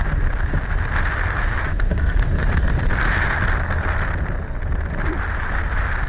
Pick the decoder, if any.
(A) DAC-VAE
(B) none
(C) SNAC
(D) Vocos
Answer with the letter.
B